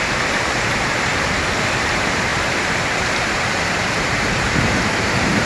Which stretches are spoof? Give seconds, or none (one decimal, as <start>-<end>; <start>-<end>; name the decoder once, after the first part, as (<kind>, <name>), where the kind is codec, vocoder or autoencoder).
0.0-5.5 (vocoder, BigVGAN v2)